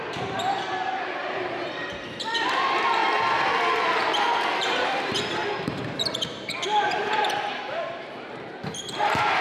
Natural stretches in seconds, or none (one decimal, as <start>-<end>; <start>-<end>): 3.0-4.6